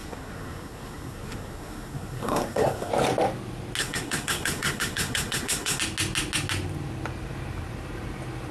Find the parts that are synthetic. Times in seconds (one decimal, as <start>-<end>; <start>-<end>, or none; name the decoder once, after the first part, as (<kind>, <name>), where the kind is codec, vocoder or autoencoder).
0.0-2.9 (codec, SNAC); 3.8-5.8